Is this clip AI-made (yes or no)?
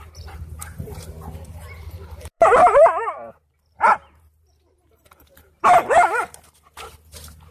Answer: yes